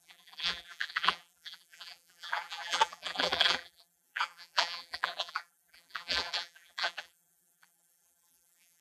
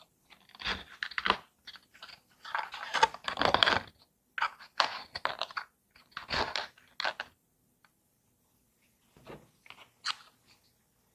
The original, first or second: second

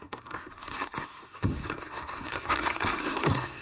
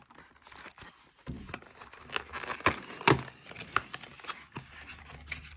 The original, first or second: second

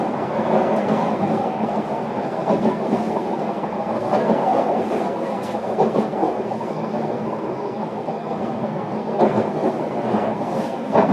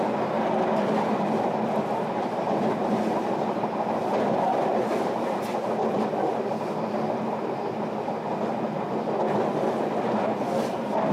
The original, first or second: second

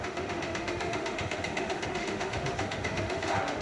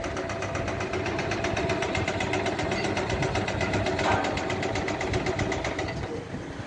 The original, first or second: second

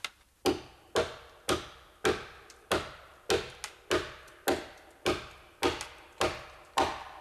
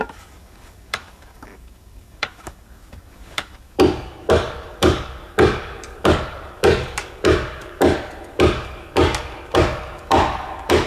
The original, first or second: first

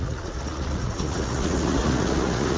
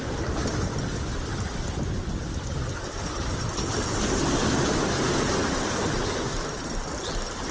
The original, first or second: second